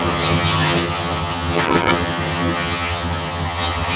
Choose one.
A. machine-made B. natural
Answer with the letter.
A